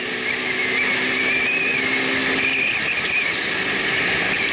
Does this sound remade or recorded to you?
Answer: recorded